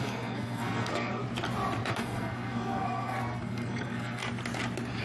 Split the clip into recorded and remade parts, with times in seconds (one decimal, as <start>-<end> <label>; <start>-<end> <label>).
0.0-1.2 remade; 1.2-1.9 recorded; 1.9-4.2 remade; 4.2-5.0 recorded